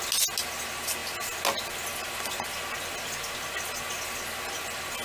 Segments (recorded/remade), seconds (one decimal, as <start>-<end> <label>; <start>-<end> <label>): 0.0-5.0 recorded